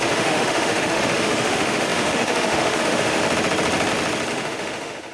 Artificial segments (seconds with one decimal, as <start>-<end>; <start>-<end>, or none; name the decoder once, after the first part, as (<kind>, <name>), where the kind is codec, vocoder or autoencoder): 0.0-3.2 (autoencoder, DAC-VAE); 4.3-5.1

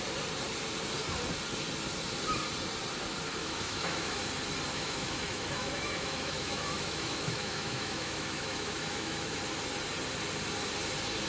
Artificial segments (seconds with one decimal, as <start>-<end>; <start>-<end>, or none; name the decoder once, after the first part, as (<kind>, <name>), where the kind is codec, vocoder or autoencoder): 3.4-4.2 (autoencoder, DAC-VAE); 4.7-9.4

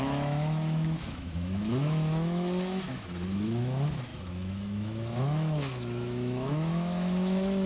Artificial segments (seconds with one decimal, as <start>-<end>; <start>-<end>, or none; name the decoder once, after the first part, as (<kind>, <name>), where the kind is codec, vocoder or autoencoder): 0.0-7.7 (autoencoder, DAC-VAE)

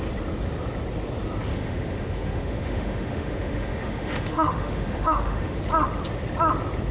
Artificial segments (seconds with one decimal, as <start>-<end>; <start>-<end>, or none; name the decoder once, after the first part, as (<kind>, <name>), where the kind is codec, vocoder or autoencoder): 1.5-5.6 (autoencoder, DAC-VAE)